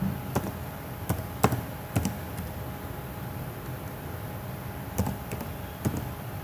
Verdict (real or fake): fake